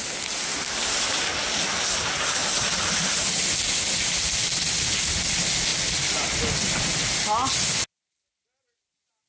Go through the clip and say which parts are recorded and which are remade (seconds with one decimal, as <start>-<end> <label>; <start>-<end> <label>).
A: 0.0-9.3 recorded